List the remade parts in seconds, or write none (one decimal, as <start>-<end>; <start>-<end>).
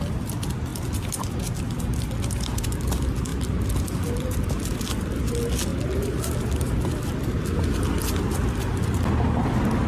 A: 3.3-5.2; 5.7-7.1